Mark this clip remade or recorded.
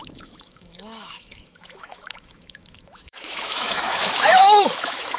remade